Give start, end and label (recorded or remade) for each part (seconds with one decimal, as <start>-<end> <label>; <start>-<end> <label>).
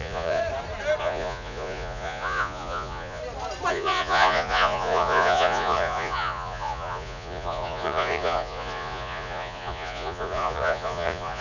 0.0-0.4 remade; 0.4-1.0 recorded; 1.0-3.2 remade; 3.2-3.7 recorded; 3.7-11.4 remade